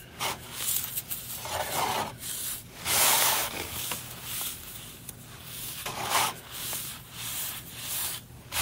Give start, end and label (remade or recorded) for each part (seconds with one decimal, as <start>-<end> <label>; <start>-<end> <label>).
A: 0.0-0.9 remade; 0.9-2.7 recorded; 2.7-6.9 remade; 6.9-7.9 recorded; 7.9-8.6 remade